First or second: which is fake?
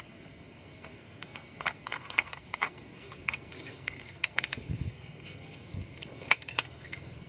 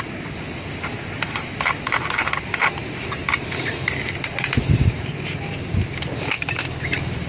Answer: first